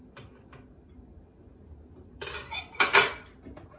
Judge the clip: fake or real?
real